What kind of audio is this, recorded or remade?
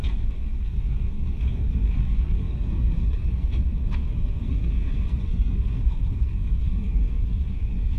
remade